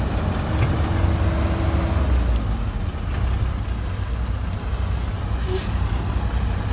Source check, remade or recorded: recorded